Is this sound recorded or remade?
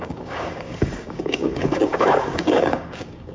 remade